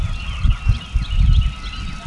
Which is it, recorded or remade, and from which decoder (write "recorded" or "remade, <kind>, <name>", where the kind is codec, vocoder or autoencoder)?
recorded